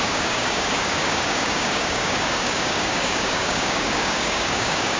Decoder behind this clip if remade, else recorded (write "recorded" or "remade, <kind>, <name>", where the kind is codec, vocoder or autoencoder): remade, codec, DAC